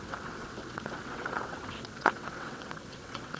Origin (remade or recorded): remade